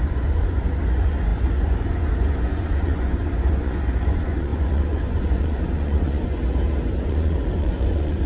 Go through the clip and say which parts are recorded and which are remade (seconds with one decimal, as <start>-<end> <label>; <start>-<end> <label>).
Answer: 0.0-6.4 remade; 6.4-7.0 recorded; 7.0-8.3 remade